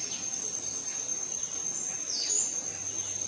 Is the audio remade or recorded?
recorded